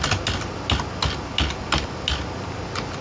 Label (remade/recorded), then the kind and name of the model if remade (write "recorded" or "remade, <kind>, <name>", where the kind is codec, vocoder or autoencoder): recorded